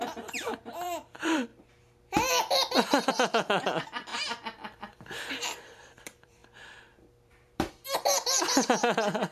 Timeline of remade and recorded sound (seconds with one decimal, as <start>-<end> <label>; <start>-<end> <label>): 0.0-1.5 remade; 1.5-3.1 recorded; 3.1-9.3 remade